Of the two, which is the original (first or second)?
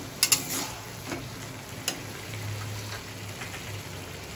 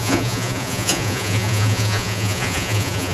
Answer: first